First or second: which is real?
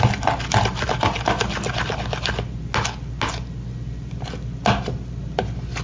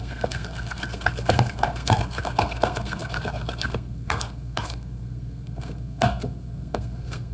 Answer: first